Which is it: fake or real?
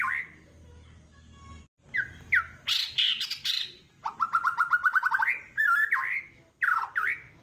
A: real